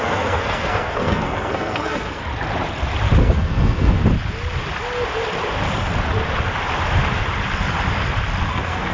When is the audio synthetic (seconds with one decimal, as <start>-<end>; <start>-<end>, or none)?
0.0-2.3; 3.2-4.0; 8.5-8.9